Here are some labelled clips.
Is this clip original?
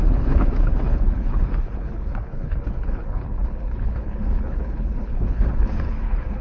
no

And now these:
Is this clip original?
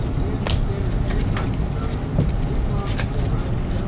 yes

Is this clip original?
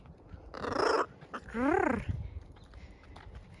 yes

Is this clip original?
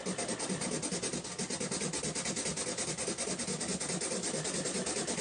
yes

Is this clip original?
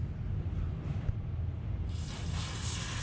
yes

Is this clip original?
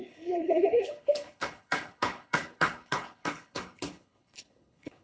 no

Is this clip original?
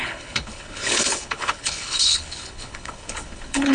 no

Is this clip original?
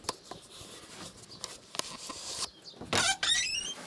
yes